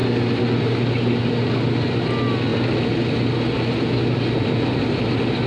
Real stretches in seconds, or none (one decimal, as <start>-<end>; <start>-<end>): 0.0-5.5